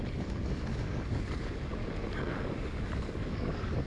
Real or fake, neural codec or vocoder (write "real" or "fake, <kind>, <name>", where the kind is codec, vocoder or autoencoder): fake, codec, DAC